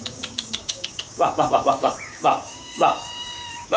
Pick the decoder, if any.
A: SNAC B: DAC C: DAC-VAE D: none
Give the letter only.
B